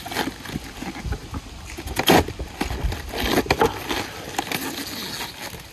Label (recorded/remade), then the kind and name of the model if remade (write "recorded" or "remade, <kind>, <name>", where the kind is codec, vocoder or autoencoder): recorded